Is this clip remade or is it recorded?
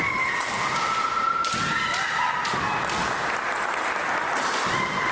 recorded